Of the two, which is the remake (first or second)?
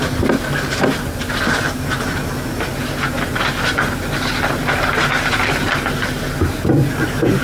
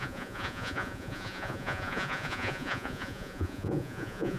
second